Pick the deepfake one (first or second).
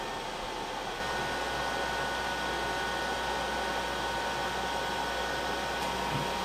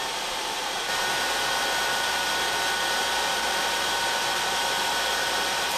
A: second